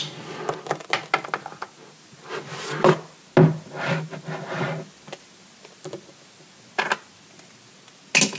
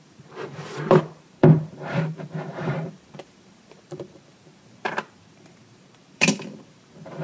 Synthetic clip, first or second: second